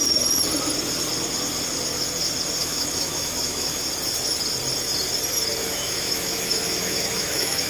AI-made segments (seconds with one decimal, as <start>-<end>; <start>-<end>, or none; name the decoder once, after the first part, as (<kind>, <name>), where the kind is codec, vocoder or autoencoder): 2.6-3.8 (autoencoder, DAC-VAE); 5.6-7.7